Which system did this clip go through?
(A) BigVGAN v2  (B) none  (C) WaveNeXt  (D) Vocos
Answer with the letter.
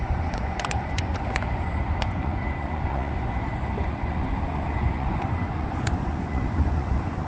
D